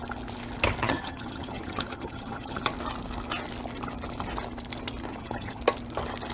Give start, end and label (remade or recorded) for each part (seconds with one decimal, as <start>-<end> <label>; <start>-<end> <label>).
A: 0.0-0.8 recorded; 0.8-2.6 remade; 2.6-5.1 recorded; 5.1-5.6 remade; 5.6-6.3 recorded